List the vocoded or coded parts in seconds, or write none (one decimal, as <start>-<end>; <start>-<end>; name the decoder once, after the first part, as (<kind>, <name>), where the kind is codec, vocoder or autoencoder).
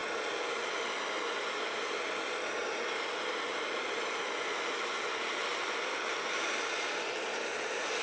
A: none